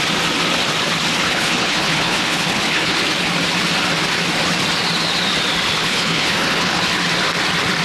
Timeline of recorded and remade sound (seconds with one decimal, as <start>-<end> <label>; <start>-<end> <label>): 0.0-1.3 recorded; 1.3-3.0 remade; 3.0-5.8 recorded; 5.8-6.8 remade; 6.8-7.8 recorded